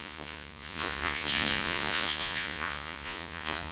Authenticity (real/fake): fake